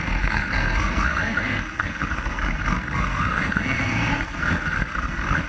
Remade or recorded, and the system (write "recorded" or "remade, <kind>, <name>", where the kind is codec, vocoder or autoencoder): remade, codec, SNAC